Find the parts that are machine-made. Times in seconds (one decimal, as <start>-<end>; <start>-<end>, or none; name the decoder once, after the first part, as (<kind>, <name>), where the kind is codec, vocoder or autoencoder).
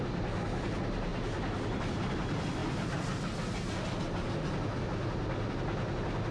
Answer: none